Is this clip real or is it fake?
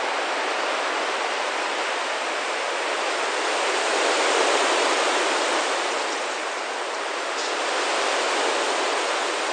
real